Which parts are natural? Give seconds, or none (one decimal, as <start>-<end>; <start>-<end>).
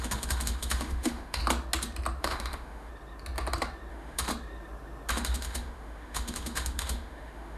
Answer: 1.4-2.2; 2.9-3.9; 4.3-5.1